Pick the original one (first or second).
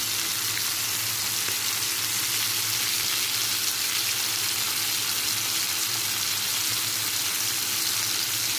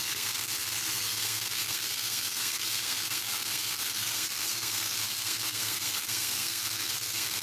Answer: first